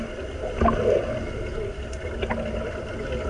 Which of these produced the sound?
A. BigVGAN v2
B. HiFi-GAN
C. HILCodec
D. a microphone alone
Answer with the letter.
D